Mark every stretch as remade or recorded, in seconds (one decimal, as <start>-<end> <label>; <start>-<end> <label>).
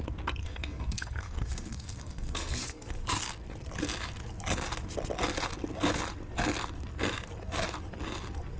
0.0-0.4 recorded; 0.4-3.0 remade; 3.0-8.6 recorded